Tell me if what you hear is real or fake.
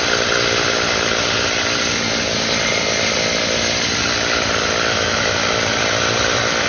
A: real